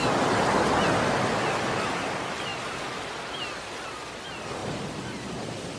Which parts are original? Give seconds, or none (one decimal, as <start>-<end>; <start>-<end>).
0.0-5.8